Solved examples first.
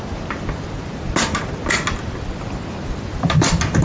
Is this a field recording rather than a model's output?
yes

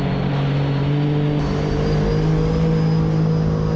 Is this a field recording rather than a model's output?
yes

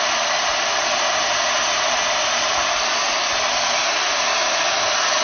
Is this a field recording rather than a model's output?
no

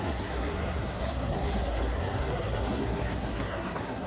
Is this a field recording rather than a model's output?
no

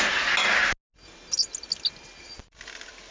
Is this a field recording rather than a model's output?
yes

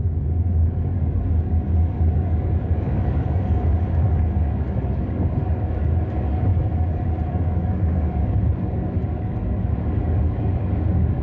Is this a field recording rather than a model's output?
no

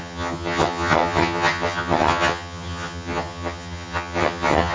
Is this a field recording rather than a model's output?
no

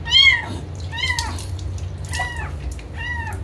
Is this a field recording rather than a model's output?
yes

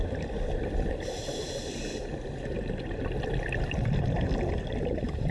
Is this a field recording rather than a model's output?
yes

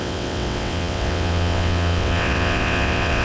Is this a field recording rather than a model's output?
no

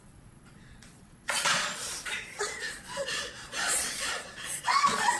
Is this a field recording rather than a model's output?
no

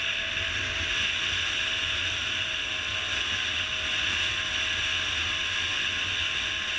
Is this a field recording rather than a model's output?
yes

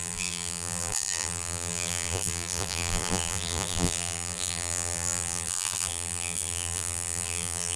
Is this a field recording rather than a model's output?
no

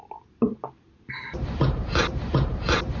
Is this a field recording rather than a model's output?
yes